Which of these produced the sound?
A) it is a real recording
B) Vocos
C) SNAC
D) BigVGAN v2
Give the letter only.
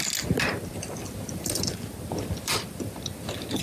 A